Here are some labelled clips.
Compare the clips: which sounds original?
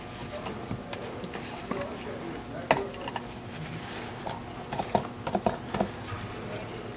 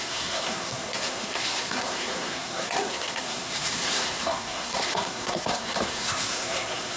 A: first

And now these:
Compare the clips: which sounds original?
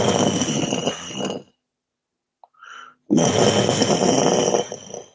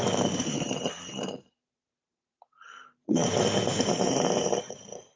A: first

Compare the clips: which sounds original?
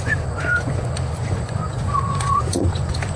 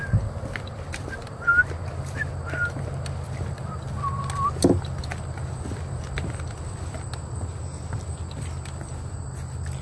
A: second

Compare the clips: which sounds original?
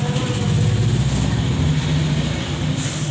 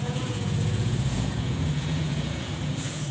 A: first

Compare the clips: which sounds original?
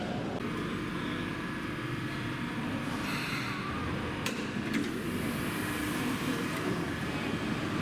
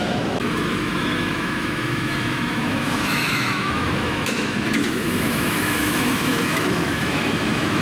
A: first